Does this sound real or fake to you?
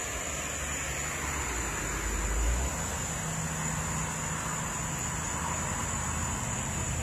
real